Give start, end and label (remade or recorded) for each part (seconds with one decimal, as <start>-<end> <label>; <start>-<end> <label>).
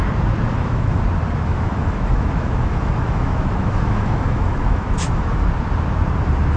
0.0-0.5 recorded; 0.5-1.0 remade; 1.0-1.5 recorded; 1.5-5.5 remade; 5.5-6.6 recorded